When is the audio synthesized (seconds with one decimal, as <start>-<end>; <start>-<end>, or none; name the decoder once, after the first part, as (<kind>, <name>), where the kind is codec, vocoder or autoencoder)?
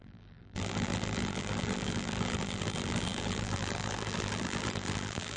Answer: 0.0-5.4 (vocoder, BigVGAN v2)